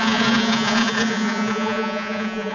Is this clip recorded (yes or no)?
no